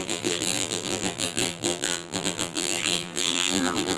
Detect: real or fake fake